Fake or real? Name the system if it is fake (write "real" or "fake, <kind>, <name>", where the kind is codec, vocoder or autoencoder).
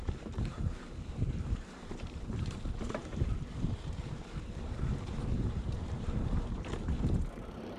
fake, vocoder, BigVGAN v2